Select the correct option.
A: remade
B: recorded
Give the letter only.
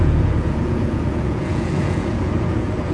A